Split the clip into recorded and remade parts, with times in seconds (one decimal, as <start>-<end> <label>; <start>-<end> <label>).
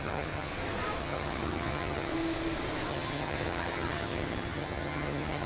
0.0-0.5 remade; 0.5-1.0 recorded; 1.0-2.1 remade; 2.1-2.9 recorded; 2.9-5.5 remade